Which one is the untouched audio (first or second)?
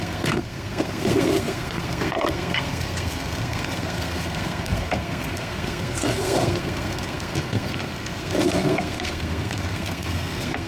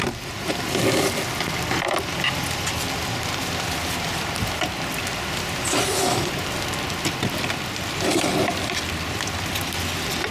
second